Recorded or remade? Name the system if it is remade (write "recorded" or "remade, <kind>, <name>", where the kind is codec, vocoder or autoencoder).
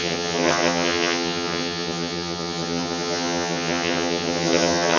remade, vocoder, HiFi-GAN